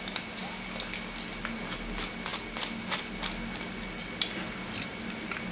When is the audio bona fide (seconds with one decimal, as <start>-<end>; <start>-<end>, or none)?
0.0-5.5